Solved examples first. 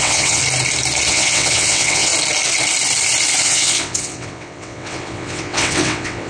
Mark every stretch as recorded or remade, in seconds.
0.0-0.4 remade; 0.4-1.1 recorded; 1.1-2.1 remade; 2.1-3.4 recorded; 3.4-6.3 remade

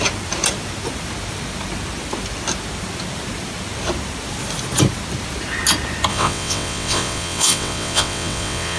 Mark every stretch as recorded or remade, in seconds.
0.0-6.1 recorded; 6.1-8.8 remade

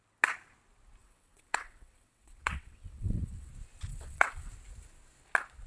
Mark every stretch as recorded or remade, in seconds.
0.0-1.0 recorded; 1.0-3.5 remade; 3.5-3.9 recorded; 3.9-4.5 remade; 4.5-5.7 recorded

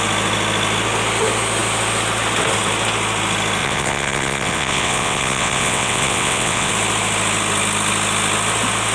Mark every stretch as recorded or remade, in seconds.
0.0-3.6 recorded; 3.6-6.7 remade; 6.7-8.9 recorded

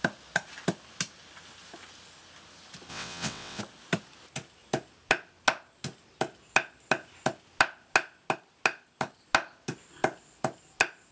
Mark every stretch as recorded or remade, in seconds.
0.0-2.9 recorded; 2.9-3.6 remade; 3.6-11.1 recorded

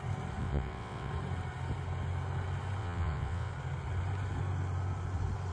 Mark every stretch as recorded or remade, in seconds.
0.0-0.4 recorded; 0.4-1.1 remade; 1.1-2.8 recorded; 2.8-3.5 remade; 3.5-5.5 recorded